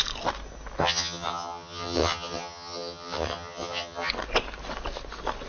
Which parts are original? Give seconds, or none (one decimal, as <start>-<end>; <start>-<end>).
0.0-0.8; 4.1-5.5